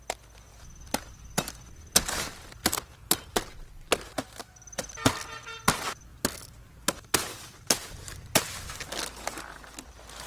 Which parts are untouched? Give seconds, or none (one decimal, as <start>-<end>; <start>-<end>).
0.0-0.5; 1.5-2.6; 3.4-6.1; 8.4-10.3